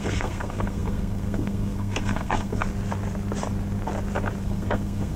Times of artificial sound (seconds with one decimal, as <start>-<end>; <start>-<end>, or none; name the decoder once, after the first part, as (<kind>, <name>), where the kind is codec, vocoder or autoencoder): 0.0-2.6 (codec, SNAC); 4.4-5.2